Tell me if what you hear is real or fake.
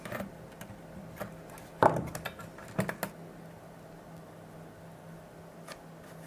real